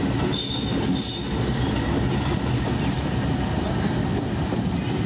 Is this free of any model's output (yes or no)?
yes